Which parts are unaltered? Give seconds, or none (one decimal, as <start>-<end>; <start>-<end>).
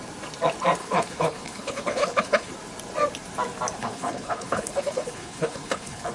0.0-0.8; 2.5-3.8